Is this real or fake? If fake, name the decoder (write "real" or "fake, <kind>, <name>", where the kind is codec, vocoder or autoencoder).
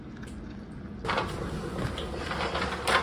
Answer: real